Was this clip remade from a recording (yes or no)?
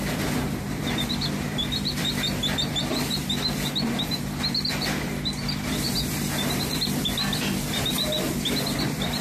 yes